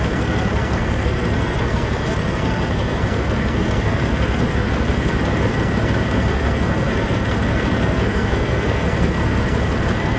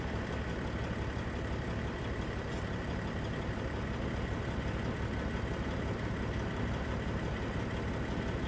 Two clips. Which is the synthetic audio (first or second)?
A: first